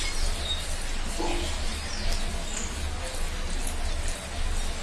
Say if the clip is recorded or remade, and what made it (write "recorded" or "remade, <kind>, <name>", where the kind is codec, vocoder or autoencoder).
recorded